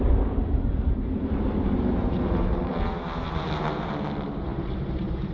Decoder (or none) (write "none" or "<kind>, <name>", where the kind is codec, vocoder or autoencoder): vocoder, BigVGAN v2